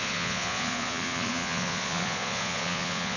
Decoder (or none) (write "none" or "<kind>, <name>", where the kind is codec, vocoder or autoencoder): vocoder, Vocos